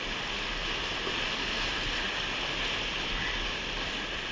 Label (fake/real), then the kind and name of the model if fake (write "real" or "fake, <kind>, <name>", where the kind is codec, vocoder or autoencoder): real